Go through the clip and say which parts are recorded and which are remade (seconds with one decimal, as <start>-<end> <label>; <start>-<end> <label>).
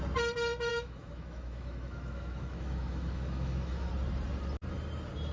0.0-0.7 recorded; 0.7-3.9 remade; 3.9-5.3 recorded